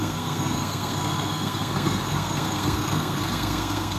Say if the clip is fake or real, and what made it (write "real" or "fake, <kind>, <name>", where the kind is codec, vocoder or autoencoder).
fake, codec, SNAC